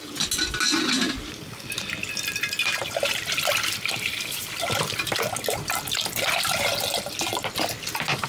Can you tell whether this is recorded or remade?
recorded